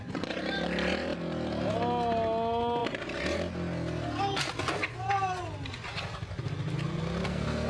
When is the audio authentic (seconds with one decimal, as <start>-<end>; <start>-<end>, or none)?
0.0-7.2